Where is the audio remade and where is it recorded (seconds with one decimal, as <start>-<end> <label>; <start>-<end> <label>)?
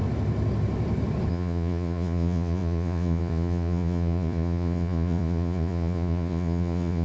0.0-1.3 recorded; 1.3-7.0 remade